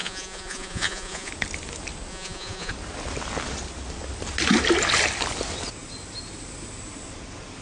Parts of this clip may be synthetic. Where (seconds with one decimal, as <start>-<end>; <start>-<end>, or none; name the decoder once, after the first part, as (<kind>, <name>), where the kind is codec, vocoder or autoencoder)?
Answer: 0.0-1.3 (vocoder, Vocos); 2.1-2.7